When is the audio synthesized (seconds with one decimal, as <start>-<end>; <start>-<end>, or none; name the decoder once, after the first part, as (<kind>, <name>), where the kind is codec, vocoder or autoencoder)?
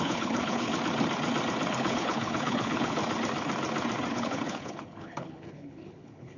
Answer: 0.0-0.7 (codec, HILCodec); 1.7-3.0; 4.1-6.4